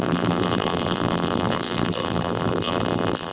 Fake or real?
fake